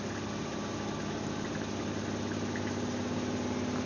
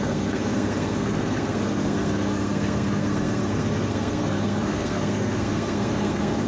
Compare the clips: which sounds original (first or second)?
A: first